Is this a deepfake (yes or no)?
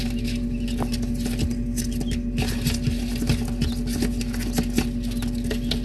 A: no